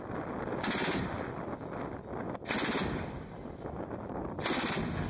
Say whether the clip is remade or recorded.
recorded